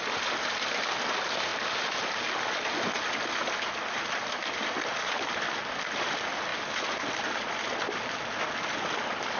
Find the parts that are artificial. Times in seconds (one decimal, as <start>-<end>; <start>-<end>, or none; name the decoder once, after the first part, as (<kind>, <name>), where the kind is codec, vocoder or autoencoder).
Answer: none

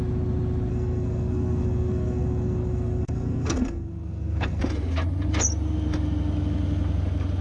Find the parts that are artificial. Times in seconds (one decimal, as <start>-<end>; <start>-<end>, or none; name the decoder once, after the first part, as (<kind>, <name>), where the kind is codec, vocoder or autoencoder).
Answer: 0.7-4.6 (codec, SNAC)

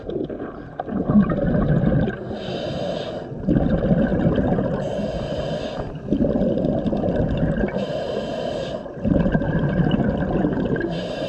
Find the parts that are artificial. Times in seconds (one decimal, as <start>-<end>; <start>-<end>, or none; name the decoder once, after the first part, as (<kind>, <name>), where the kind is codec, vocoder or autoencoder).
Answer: none